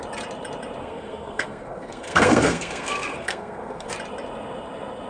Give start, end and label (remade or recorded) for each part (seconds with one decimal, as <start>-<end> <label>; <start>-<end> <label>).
0.0-0.8 recorded; 0.8-3.9 remade; 3.9-5.1 recorded